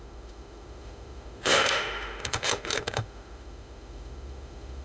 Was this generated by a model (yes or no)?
yes